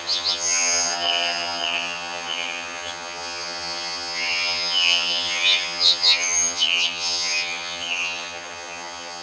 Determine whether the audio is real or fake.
fake